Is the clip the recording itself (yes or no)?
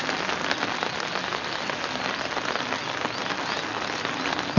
yes